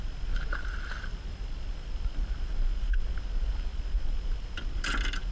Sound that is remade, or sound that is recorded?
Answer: recorded